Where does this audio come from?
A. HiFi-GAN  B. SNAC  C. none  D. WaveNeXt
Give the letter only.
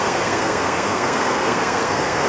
B